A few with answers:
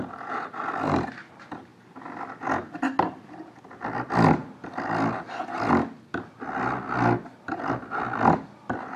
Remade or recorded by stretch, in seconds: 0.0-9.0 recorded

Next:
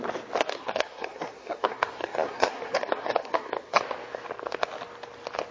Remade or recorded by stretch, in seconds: 0.0-0.5 recorded; 0.5-3.8 remade; 3.8-5.5 recorded